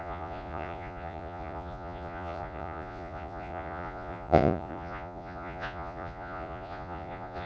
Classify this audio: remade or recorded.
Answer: remade